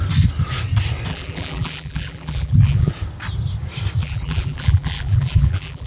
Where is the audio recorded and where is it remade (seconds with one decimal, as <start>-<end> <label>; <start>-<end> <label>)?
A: 0.0-1.1 recorded; 1.1-2.9 remade; 2.9-4.0 recorded; 4.0-5.9 remade

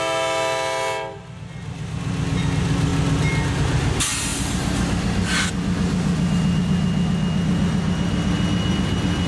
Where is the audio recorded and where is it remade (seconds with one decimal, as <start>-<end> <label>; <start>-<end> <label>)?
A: 0.0-9.3 recorded

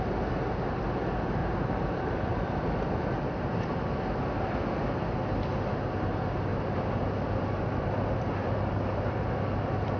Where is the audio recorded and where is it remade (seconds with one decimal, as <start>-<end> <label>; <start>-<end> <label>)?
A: 0.0-1.4 recorded; 1.4-3.7 remade; 3.7-6.5 recorded; 6.5-10.0 remade

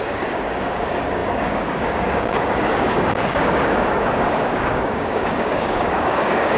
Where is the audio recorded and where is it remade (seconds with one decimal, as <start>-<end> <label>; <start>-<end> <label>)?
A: 0.0-6.6 remade

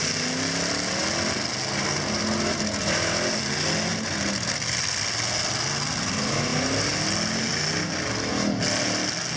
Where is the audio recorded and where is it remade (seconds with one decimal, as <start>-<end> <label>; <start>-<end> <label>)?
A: 0.0-9.4 recorded

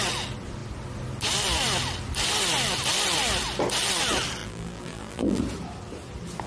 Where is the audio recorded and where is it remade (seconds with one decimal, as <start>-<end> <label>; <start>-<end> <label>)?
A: 0.0-4.4 recorded; 4.4-5.4 remade; 5.4-6.5 recorded

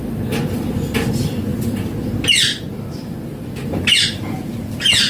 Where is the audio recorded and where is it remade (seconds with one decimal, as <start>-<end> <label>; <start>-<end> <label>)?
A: 0.0-5.1 remade

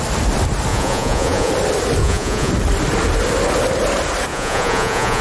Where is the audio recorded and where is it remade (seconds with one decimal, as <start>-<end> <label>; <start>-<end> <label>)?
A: 0.0-0.7 recorded; 0.7-1.5 remade; 1.5-2.0 recorded; 2.0-2.5 remade; 2.5-4.3 recorded; 4.3-5.2 remade